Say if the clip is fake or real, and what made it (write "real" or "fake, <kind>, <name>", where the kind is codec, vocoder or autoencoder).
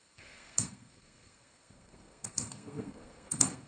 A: fake, codec, SNAC